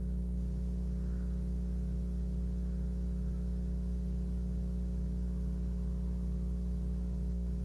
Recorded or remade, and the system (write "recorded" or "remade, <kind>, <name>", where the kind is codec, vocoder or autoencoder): recorded